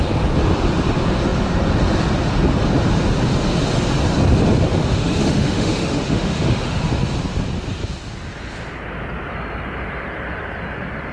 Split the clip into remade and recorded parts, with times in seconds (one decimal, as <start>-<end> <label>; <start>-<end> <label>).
0.0-4.7 recorded; 4.7-6.8 remade; 6.8-11.1 recorded